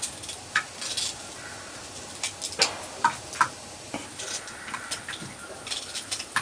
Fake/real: real